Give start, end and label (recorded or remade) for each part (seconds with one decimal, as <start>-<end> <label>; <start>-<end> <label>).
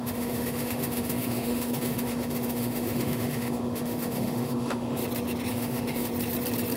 0.0-5.0 remade; 5.0-5.5 recorded; 5.5-6.1 remade; 6.1-6.8 recorded